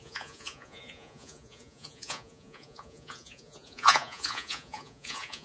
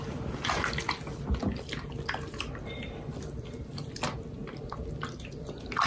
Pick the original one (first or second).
second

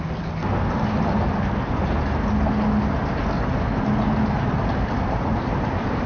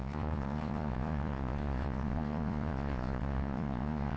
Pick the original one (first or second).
first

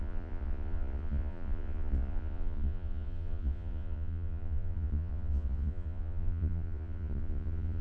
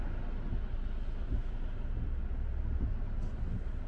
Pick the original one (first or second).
second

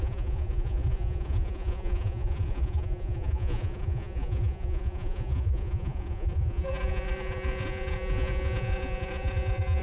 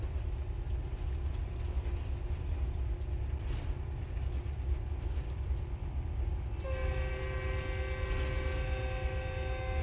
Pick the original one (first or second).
second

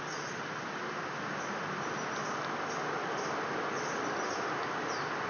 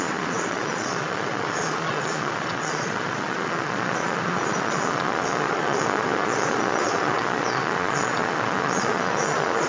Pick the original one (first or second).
first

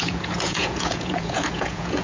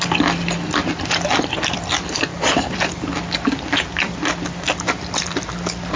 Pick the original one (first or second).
second